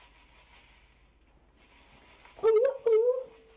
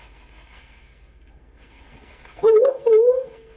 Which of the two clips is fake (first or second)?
second